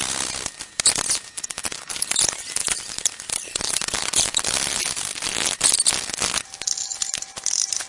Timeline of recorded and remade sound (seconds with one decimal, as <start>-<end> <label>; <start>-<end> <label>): 0.0-2.6 recorded; 2.6-5.6 remade; 5.6-7.9 recorded